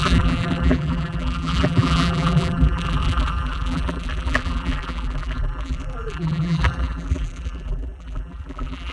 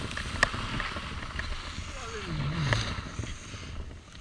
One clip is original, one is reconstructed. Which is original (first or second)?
second